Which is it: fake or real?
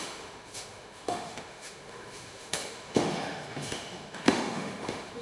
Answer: fake